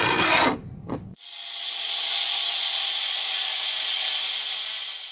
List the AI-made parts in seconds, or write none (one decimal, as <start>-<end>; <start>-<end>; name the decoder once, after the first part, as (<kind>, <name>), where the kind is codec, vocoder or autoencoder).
1.1-4.2 (vocoder, Vocos)